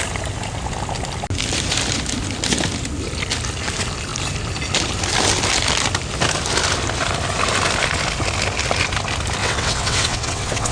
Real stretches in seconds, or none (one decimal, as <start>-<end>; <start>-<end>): 0.0-9.4